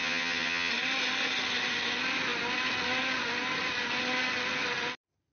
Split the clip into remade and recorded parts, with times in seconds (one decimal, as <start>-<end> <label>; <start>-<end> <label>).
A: 0.0-0.7 remade; 0.7-5.3 recorded